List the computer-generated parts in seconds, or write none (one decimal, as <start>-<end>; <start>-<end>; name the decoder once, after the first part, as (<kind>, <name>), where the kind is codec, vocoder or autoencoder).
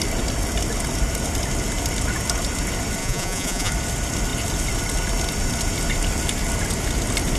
3.0-3.7 (vocoder, Vocos)